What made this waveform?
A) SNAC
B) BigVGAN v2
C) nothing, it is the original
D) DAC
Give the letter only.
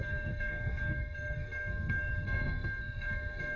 A